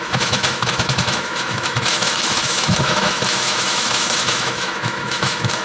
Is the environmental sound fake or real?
fake